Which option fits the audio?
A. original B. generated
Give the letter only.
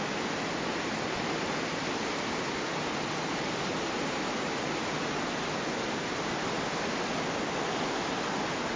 A